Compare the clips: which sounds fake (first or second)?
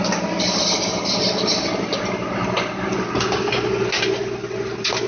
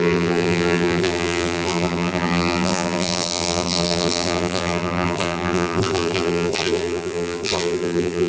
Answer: second